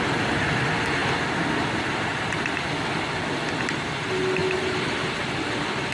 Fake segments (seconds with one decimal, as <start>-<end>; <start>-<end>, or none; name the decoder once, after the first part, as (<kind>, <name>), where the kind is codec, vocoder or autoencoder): none